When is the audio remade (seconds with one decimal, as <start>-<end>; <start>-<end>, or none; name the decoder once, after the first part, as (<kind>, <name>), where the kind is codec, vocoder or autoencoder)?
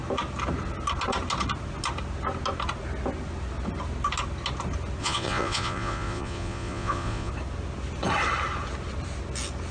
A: 5.0-7.3 (vocoder, Vocos)